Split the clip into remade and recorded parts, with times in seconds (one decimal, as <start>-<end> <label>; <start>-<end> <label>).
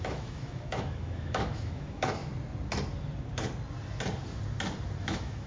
0.0-2.2 remade; 2.2-5.0 recorded; 5.0-5.5 remade